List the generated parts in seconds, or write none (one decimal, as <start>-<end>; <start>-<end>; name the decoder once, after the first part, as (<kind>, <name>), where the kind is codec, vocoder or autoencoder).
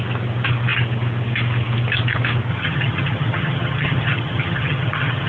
2.5-5.3 (vocoder, HiFi-GAN)